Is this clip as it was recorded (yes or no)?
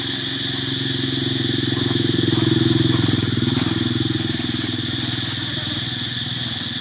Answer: yes